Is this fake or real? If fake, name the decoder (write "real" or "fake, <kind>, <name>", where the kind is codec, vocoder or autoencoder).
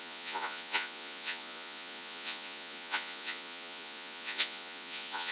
fake, vocoder, Vocos